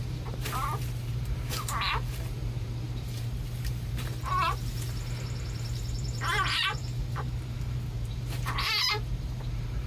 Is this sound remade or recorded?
remade